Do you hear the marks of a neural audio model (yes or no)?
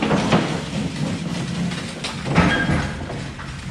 no